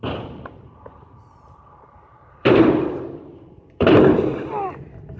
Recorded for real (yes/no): no